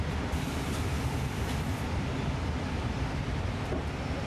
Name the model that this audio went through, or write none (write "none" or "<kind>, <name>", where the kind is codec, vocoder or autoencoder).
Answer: vocoder, BigVGAN v2